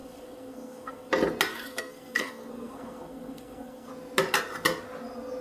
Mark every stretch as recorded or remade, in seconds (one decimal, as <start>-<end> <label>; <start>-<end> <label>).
0.0-1.1 remade; 1.1-1.5 recorded; 1.5-3.9 remade; 3.9-5.4 recorded